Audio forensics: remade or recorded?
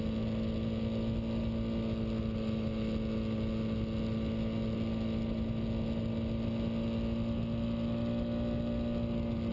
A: recorded